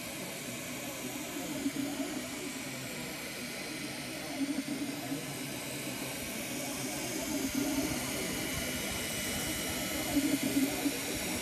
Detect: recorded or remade recorded